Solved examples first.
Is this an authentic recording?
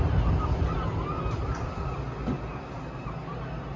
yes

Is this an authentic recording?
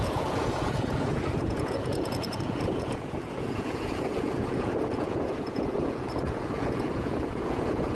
no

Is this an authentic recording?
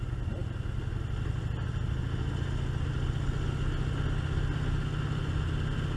yes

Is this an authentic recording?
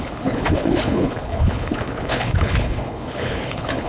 no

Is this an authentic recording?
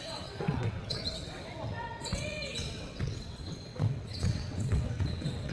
no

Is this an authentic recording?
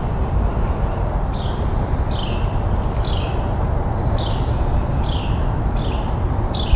yes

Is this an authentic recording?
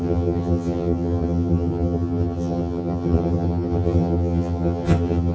no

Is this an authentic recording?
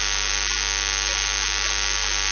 yes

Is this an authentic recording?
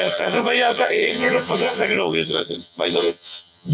no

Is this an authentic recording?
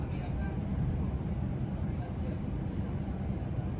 yes